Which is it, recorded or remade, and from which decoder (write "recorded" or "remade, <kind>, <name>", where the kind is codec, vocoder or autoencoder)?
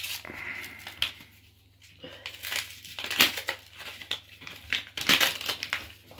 recorded